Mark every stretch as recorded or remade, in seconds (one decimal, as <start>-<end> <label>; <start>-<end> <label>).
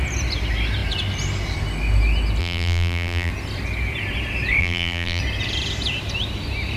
0.0-2.4 recorded; 2.4-3.3 remade; 3.3-4.6 recorded; 4.6-5.2 remade; 5.2-6.8 recorded